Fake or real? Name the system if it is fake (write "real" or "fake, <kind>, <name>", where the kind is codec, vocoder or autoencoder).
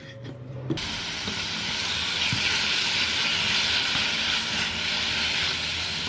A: real